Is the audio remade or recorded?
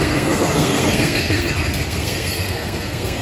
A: remade